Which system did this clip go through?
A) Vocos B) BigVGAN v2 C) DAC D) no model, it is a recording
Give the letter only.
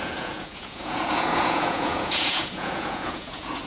A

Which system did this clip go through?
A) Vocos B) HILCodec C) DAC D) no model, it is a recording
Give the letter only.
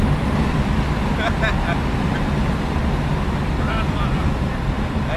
D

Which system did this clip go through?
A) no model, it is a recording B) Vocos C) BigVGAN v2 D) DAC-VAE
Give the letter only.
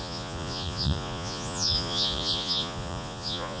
B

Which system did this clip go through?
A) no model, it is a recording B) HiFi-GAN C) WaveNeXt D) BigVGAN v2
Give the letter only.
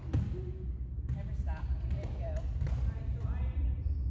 A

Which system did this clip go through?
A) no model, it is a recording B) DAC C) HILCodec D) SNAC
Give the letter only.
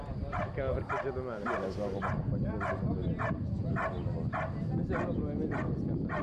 A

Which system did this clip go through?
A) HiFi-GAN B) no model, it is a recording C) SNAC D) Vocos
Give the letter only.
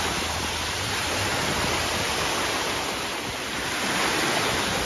B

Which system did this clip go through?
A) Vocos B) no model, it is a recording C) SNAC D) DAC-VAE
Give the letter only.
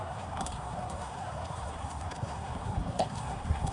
C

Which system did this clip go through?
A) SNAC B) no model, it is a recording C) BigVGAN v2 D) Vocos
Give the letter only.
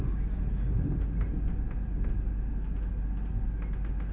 B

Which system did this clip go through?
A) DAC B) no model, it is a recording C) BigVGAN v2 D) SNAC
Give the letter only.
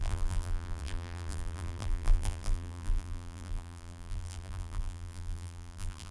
C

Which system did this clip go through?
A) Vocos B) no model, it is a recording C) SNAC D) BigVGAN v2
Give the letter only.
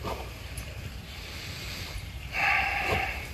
D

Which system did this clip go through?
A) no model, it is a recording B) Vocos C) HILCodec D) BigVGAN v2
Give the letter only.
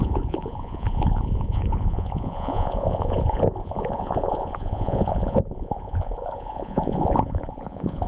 B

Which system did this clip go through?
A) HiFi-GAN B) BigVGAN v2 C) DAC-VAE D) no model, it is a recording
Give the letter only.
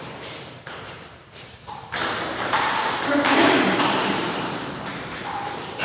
B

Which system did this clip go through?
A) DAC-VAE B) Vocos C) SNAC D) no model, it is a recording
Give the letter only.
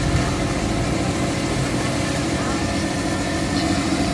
D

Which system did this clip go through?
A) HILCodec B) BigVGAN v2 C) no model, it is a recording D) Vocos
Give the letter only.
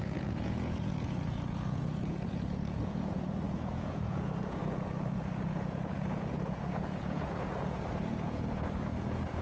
D